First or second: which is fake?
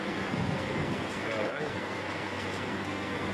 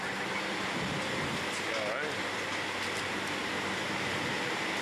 first